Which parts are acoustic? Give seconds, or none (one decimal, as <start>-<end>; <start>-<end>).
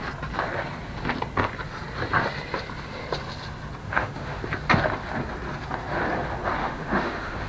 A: 0.0-3.8; 4.4-6.6